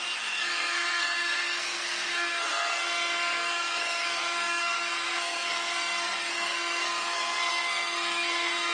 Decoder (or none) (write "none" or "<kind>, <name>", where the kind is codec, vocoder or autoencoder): codec, SNAC